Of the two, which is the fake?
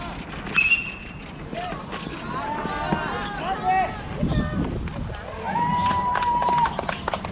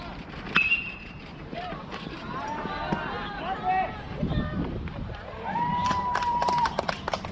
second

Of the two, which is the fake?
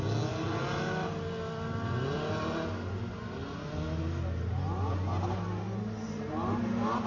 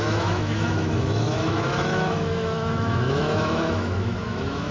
second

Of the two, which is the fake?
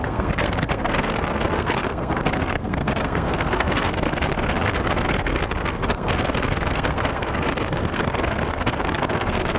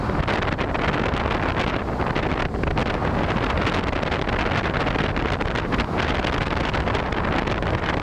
first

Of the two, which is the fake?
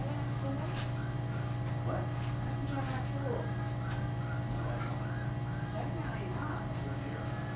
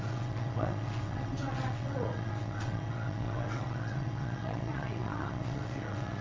second